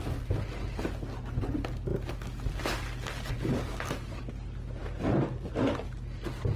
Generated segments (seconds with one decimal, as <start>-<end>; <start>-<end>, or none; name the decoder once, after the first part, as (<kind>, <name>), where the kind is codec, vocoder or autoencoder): none